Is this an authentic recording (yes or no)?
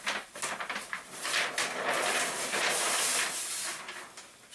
yes